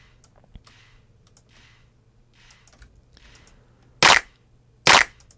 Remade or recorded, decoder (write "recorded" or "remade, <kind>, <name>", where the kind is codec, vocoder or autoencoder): recorded